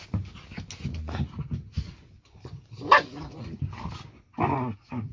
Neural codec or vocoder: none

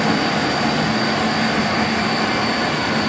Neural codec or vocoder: none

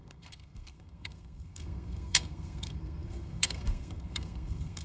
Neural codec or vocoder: codec, SNAC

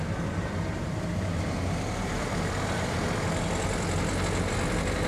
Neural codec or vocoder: none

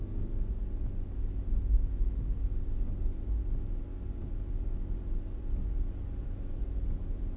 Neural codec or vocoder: none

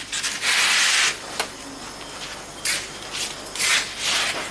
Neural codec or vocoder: none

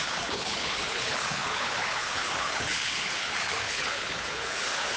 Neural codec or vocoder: codec, HILCodec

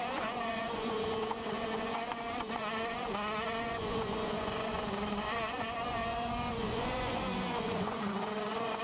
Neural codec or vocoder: vocoder, Vocos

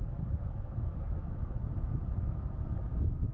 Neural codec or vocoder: autoencoder, DAC-VAE